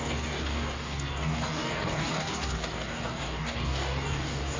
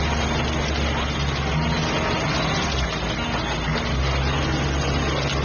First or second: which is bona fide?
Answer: second